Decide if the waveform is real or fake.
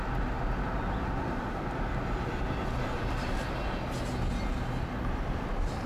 real